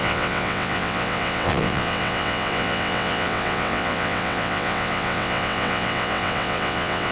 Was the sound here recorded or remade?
remade